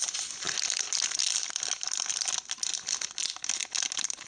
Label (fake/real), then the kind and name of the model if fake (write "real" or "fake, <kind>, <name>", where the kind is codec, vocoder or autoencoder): real